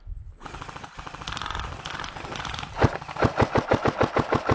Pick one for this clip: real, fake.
real